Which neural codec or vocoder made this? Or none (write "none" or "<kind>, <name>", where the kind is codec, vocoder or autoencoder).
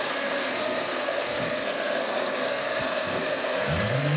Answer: codec, SNAC